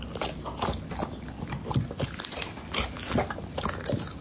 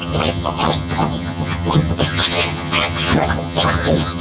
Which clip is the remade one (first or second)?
second